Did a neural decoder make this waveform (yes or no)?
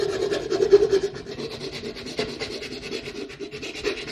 yes